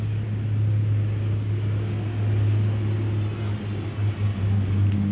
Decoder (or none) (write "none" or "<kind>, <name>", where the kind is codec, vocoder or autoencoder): none